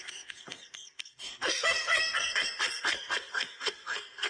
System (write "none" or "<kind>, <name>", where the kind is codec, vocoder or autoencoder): codec, SNAC